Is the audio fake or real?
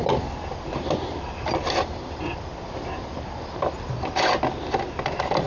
real